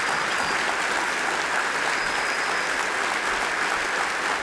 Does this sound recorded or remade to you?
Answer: recorded